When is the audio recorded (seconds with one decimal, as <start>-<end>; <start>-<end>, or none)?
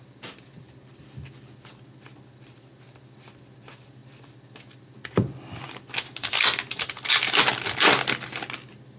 0.0-9.0